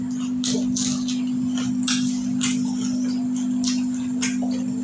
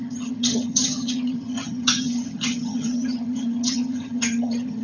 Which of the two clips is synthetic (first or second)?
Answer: second